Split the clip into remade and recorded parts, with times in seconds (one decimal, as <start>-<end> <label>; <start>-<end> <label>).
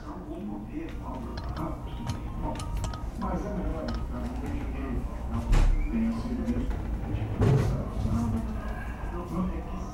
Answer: 0.0-3.7 recorded; 3.7-5.4 remade; 5.4-9.9 recorded